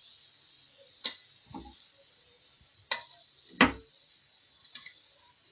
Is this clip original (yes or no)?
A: yes